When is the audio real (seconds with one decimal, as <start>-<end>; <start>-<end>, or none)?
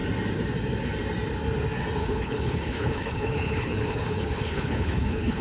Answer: 0.0-2.0